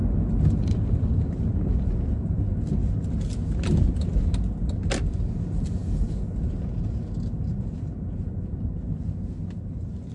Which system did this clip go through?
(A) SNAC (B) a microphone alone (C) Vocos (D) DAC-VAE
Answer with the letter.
B